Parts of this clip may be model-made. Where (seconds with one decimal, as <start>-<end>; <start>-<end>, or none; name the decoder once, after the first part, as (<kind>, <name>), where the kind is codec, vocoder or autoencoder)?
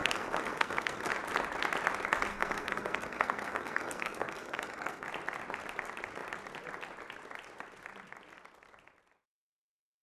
0.0-1.1 (codec, SNAC); 2.3-5.1